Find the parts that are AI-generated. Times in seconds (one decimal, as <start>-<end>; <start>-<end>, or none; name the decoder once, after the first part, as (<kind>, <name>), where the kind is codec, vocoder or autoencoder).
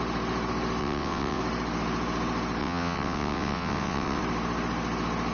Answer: 0.8-1.4 (vocoder, WaveNeXt); 2.6-4.2